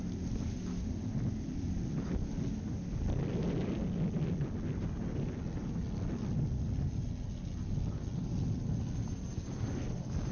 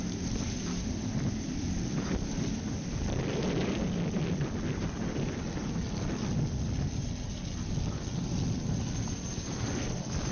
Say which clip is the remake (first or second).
second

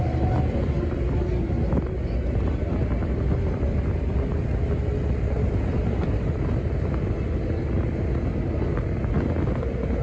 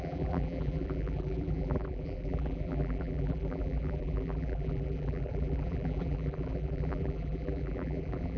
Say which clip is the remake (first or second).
second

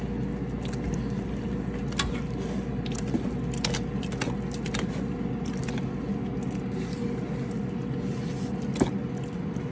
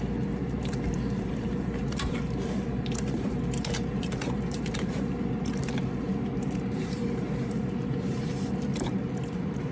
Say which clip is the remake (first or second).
second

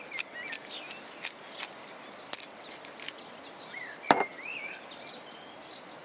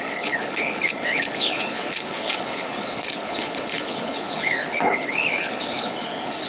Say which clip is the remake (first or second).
second